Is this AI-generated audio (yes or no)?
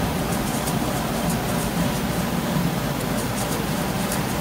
yes